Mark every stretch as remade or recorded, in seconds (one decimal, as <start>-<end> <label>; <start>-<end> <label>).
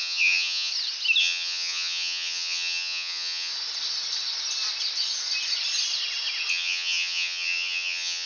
0.0-0.7 remade; 0.7-1.2 recorded; 1.2-3.5 remade; 3.5-6.5 recorded; 6.5-8.3 remade